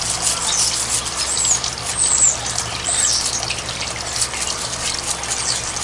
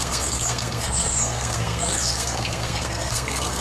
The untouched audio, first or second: first